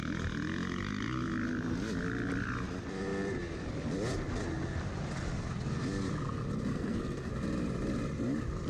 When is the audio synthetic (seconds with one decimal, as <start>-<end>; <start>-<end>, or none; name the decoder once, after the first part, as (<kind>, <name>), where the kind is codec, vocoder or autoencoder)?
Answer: 6.7-7.3 (codec, SNAC)